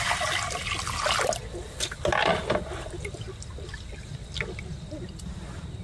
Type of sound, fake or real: real